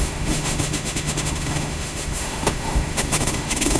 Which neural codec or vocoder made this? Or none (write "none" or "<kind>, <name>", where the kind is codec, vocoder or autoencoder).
autoencoder, DAC-VAE